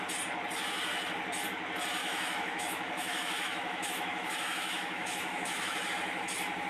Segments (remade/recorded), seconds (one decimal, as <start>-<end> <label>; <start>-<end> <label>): 0.0-2.0 recorded; 2.0-5.9 remade; 5.9-6.7 recorded